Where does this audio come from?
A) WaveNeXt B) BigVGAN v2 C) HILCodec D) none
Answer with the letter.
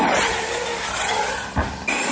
D